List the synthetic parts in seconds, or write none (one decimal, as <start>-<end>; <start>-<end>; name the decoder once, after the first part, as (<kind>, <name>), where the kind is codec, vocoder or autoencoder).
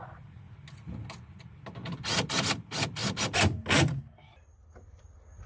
none